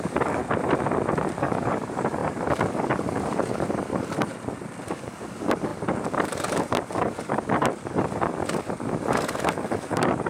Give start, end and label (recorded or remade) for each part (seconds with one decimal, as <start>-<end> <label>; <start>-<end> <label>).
0.0-0.4 remade; 0.4-1.4 recorded; 1.4-4.3 remade; 4.3-4.9 recorded; 4.9-10.3 remade